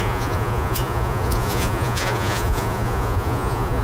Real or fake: fake